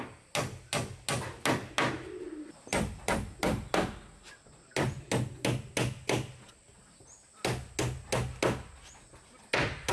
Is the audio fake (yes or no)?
no